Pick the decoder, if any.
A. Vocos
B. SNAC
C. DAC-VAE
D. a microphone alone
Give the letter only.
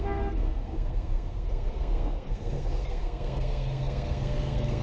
B